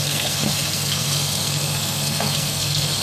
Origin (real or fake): fake